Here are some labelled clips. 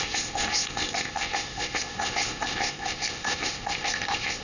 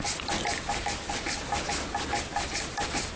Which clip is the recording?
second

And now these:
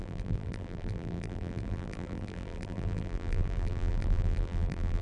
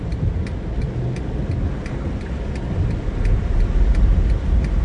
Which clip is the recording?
second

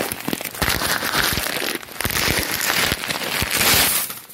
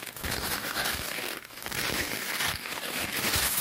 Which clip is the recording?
first